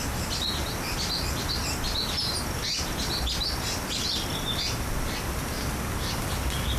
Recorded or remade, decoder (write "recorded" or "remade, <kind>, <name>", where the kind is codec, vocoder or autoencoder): recorded